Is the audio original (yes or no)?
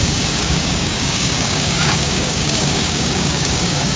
no